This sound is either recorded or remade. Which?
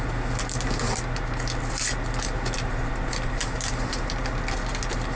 recorded